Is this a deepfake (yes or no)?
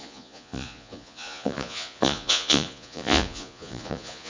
yes